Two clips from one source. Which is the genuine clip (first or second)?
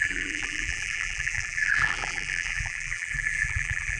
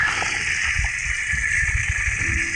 second